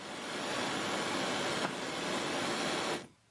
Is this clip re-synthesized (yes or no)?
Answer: no